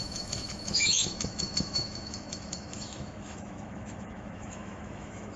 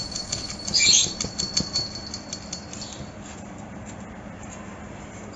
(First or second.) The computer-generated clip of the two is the first